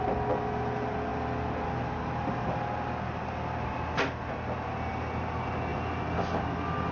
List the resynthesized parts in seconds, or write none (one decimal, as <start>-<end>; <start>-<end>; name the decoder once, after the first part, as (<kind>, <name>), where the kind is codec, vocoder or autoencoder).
none